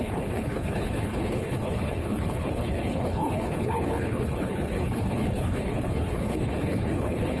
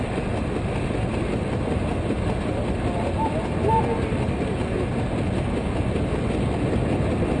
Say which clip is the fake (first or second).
first